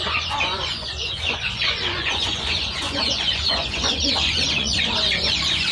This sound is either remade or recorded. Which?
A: remade